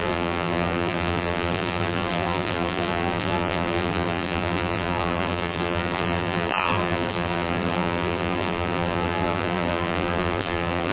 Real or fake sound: fake